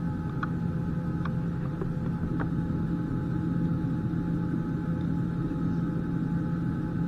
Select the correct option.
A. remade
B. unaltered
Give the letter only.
B